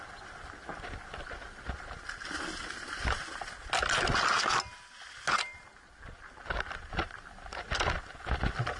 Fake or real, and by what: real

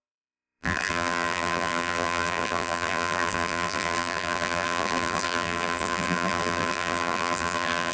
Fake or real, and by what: fake, vocoder, BigVGAN v2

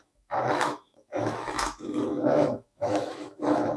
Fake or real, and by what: fake, autoencoder, DAC-VAE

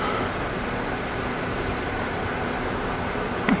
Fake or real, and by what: real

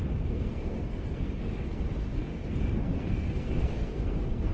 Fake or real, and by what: fake, codec, SNAC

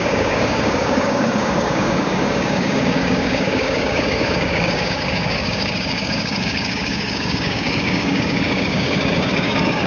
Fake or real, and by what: fake, codec, DAC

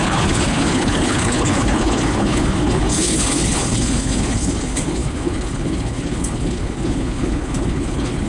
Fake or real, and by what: fake, codec, HILCodec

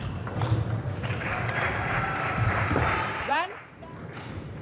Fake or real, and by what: fake, vocoder, BigVGAN v2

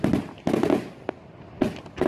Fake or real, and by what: real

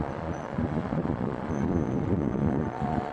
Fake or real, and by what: fake, vocoder, Vocos